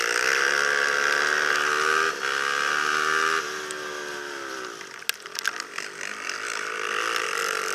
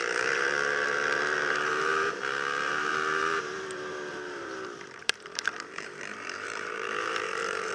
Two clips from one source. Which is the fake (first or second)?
second